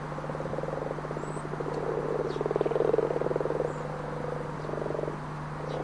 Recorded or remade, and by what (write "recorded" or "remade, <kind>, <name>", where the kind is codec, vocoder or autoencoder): recorded